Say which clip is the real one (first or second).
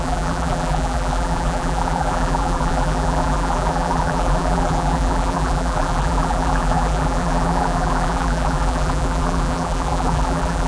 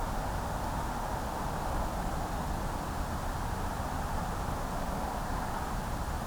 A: second